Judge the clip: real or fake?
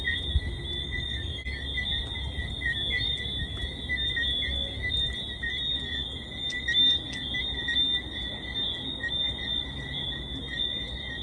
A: real